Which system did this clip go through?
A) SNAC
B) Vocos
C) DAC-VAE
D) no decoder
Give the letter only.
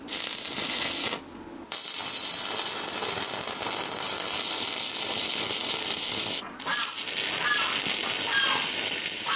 D